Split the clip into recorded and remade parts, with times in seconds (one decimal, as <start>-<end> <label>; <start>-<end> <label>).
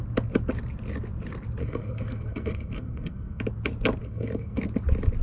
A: 0.0-1.6 recorded; 1.6-3.4 remade; 3.4-4.0 recorded; 4.0-4.6 remade; 4.6-5.2 recorded